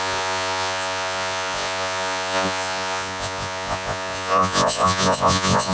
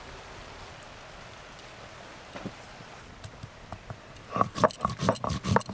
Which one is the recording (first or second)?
second